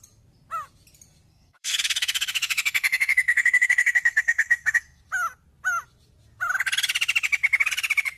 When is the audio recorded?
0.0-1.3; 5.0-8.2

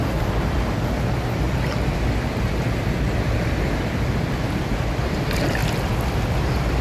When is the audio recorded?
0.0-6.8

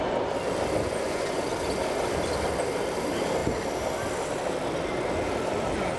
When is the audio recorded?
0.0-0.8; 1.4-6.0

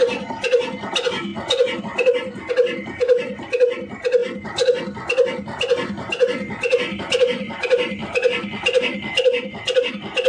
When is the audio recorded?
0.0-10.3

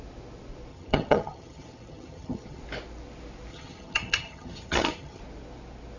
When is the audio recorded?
0.0-0.7; 2.6-3.5; 5.2-6.0